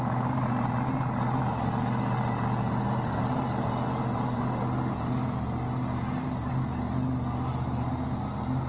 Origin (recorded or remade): recorded